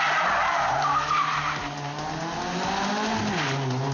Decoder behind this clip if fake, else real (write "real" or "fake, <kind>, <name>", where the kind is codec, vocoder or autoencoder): real